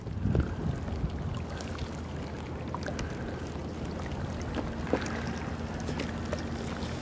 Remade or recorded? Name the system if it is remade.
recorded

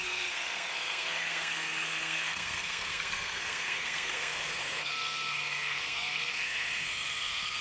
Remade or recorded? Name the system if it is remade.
remade, codec, SNAC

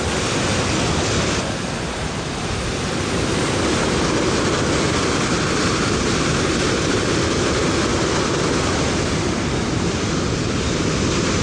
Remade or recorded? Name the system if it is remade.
recorded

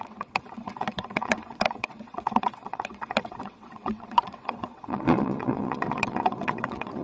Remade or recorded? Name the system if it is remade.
remade, vocoder, WaveNeXt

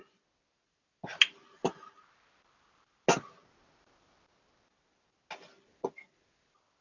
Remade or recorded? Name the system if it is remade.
recorded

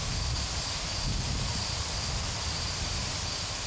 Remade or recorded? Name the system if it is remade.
recorded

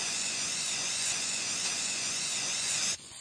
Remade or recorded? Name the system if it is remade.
remade, vocoder, Vocos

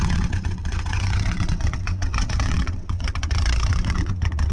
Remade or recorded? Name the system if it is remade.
remade, vocoder, WaveNeXt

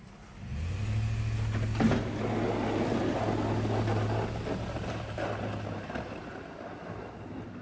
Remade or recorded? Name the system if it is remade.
recorded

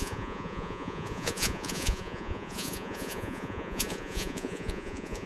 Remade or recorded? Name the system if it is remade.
remade, vocoder, Vocos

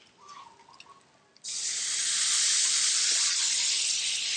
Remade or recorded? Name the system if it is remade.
recorded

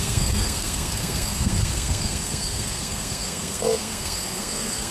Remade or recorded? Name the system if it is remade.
remade, codec, SNAC